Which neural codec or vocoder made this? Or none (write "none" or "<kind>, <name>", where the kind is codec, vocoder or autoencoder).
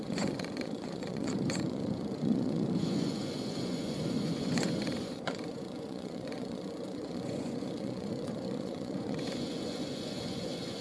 vocoder, Vocos